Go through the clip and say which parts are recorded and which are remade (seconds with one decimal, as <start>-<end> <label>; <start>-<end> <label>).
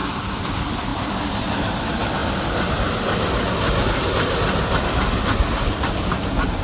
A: 0.0-0.5 remade; 0.5-0.9 recorded; 0.9-1.8 remade; 1.8-2.2 recorded; 2.2-2.7 remade; 2.7-6.6 recorded